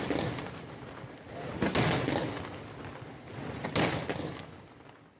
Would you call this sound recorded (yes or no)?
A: yes